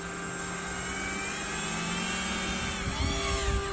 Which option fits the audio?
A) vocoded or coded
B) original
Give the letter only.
B